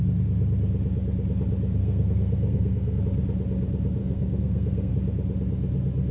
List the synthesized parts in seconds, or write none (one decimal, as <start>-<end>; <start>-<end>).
1.8-3.0; 4.0-4.9